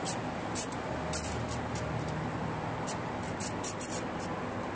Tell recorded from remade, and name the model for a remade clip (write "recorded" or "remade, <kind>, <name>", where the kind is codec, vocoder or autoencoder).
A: recorded